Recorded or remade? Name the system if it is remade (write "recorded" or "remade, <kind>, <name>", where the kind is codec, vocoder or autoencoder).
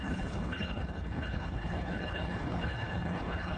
remade, codec, HILCodec